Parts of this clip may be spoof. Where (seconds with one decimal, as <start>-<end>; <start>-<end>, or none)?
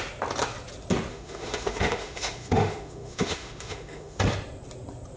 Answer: 1.1-4.2